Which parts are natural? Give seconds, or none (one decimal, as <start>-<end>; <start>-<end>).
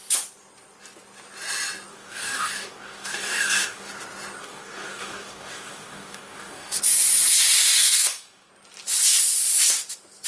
0.0-1.9; 3.9-4.4; 6.8-7.8; 8.5-10.3